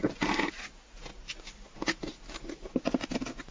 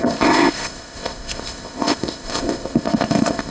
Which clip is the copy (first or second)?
second